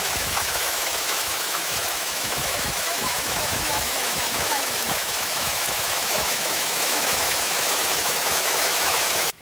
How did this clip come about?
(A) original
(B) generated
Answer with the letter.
B